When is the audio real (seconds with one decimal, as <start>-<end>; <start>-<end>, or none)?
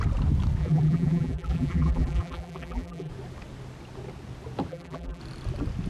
0.0-0.6; 3.1-4.7; 5.2-5.9